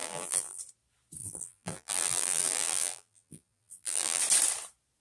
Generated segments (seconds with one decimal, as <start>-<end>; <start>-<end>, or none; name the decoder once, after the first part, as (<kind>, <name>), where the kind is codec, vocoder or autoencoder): 0.0-0.6 (vocoder, BigVGAN v2); 1.2-4.2